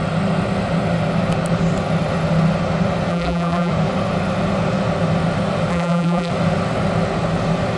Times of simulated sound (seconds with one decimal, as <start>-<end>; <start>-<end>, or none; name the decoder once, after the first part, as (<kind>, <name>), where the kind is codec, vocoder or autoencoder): 3.1-3.7 (vocoder, BigVGAN v2); 5.7-6.3